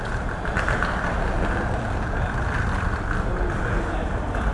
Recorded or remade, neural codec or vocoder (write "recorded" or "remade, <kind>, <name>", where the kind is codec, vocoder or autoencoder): recorded